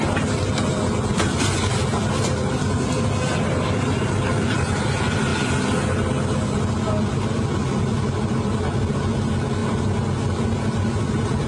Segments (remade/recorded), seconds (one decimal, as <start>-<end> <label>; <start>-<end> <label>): 0.0-11.5 recorded